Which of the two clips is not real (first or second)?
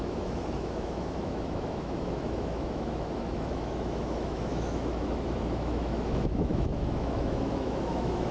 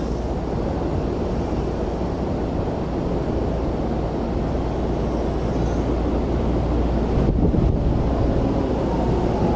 first